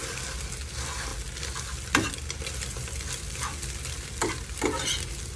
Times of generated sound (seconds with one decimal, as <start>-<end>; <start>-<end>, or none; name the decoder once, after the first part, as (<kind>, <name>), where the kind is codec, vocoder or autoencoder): none